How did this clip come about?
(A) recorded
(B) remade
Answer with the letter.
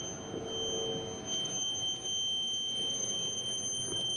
A